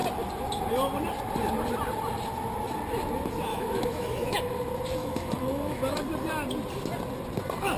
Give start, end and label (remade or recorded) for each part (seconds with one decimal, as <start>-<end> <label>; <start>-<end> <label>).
0.0-3.5 recorded; 3.5-4.4 remade; 4.4-5.0 recorded; 5.0-6.0 remade; 6.0-7.8 recorded